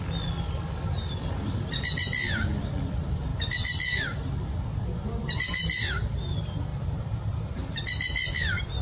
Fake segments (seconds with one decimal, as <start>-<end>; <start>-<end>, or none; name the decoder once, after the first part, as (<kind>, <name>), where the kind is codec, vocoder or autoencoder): 6.7-7.6 (vocoder, BigVGAN v2)